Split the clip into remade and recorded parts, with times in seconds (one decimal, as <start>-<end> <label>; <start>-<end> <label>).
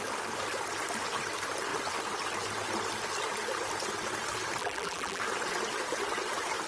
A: 0.0-4.6 recorded; 4.6-5.2 remade; 5.2-6.7 recorded